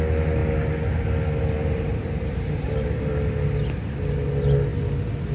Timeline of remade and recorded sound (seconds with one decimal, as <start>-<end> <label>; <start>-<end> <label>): 0.0-1.9 recorded; 1.9-3.1 remade; 3.1-5.3 recorded